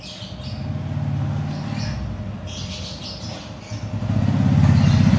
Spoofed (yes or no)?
no